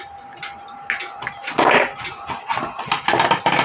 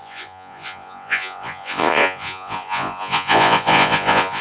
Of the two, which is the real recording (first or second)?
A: first